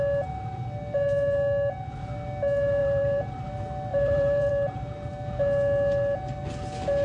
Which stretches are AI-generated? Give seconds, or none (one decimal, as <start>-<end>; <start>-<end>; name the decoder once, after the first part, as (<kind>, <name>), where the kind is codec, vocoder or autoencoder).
2.8-3.3 (vocoder, BigVGAN v2); 3.9-4.5